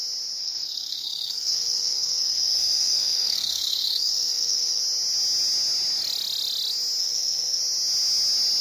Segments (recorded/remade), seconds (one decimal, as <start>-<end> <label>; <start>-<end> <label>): 0.0-0.4 recorded; 0.4-4.8 remade; 4.8-7.0 recorded; 7.0-7.6 remade; 7.6-8.6 recorded